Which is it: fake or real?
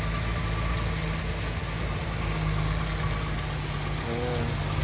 real